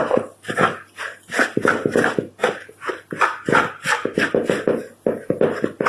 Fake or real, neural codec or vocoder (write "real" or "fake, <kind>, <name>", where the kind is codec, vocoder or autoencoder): real